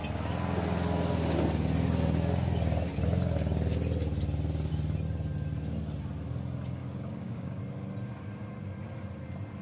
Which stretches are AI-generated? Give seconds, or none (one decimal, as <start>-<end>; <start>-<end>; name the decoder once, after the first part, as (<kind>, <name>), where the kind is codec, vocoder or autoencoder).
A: 6.8-7.6 (codec, DAC)